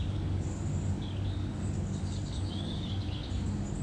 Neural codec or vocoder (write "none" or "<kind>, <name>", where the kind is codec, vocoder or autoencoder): codec, DAC